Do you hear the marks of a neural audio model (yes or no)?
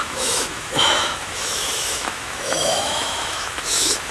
yes